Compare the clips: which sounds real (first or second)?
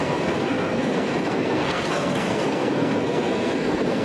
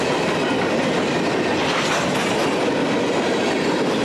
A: second